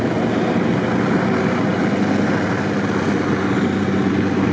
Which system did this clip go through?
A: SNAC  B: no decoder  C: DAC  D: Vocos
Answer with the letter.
B